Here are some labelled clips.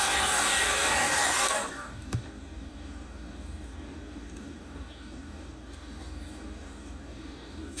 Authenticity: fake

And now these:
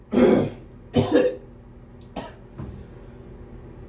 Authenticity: real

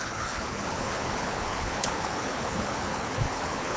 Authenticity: fake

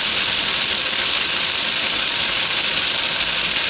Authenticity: fake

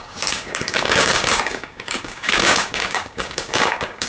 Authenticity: fake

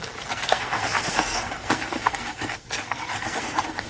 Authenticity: fake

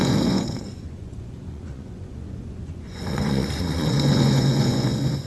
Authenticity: fake